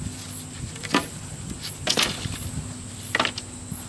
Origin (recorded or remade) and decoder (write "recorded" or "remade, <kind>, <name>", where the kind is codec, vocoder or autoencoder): recorded